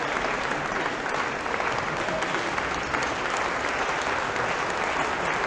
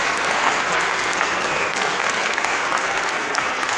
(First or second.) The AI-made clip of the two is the second